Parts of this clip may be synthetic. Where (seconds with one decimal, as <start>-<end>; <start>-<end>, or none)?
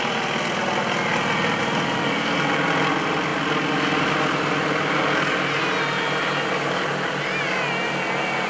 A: none